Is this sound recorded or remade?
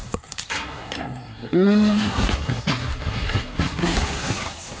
remade